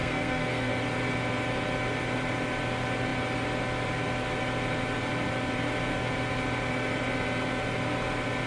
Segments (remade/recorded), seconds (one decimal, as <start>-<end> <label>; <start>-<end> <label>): 0.0-0.7 remade; 0.7-8.5 recorded